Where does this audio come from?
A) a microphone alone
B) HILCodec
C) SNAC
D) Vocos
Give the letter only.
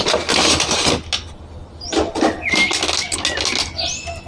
A